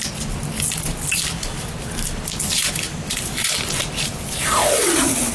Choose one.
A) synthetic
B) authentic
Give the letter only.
B